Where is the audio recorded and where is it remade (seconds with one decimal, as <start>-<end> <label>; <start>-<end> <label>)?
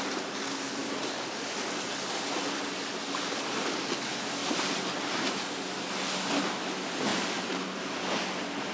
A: 0.0-4.4 recorded; 4.4-5.4 remade; 5.4-7.1 recorded; 7.1-7.9 remade; 7.9-8.7 recorded